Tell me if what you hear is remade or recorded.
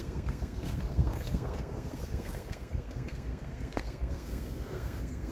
remade